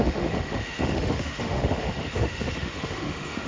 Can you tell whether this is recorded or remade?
remade